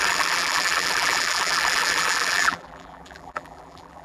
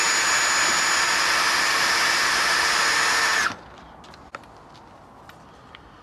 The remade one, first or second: first